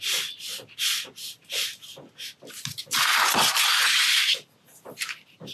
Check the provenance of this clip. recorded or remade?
recorded